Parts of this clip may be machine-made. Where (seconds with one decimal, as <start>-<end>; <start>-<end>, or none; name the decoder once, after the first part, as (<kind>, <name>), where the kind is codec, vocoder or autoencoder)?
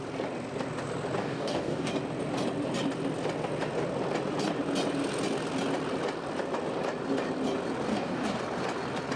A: 1.2-1.9 (codec, DAC); 7.9-8.4